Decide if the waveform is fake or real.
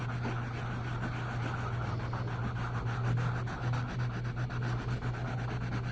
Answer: real